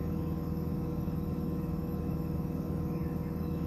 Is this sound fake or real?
fake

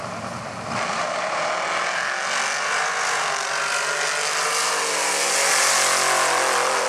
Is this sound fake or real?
real